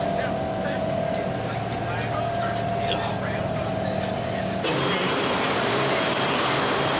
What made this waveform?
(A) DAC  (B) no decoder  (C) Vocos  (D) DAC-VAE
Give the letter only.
B